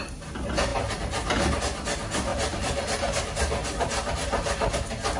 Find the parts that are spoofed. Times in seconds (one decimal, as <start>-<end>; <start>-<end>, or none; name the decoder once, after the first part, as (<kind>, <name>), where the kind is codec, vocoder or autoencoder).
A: 2.3-3.2 (vocoder, BigVGAN v2); 3.6-4.7